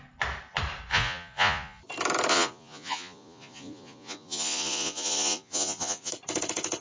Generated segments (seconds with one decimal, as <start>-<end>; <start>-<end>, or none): 0.9-1.8; 2.3-6.1